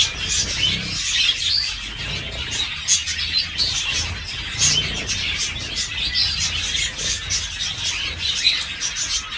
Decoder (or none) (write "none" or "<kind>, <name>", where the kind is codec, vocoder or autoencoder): none